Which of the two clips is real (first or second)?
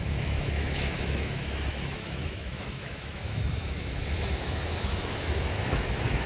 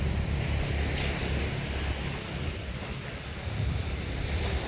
second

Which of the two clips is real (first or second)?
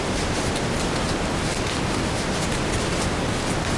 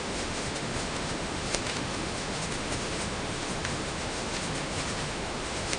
first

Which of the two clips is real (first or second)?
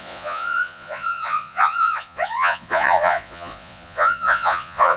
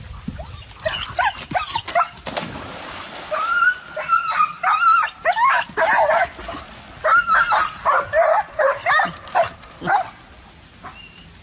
second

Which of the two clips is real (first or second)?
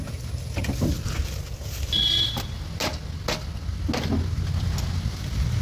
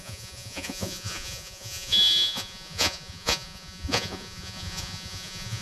first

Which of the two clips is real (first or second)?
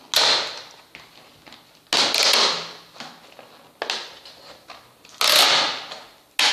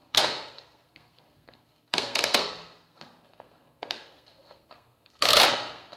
first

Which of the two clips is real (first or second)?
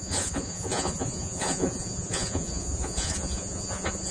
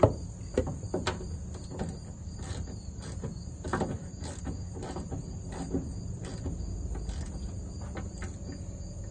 second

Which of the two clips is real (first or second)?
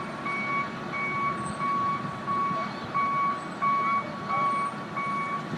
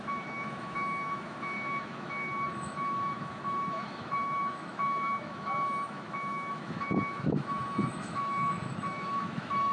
first